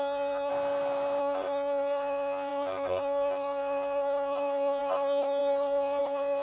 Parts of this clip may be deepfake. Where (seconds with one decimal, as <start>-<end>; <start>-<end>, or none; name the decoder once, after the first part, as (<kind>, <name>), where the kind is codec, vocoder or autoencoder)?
0.0-0.5 (codec, SNAC); 1.2-6.4